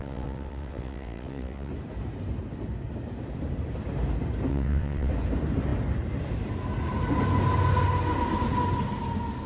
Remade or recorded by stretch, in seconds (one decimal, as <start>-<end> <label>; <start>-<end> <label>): 0.0-1.7 remade; 1.7-4.5 recorded; 4.5-5.1 remade; 5.1-9.5 recorded